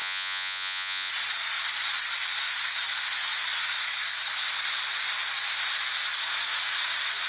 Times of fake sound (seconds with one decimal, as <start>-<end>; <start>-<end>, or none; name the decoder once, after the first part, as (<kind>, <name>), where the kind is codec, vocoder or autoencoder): 0.0-1.1 (vocoder, Vocos)